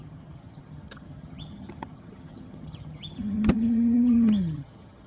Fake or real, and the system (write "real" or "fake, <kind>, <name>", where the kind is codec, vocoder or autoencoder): fake, vocoder, HiFi-GAN